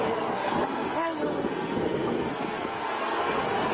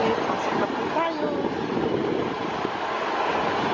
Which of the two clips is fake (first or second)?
first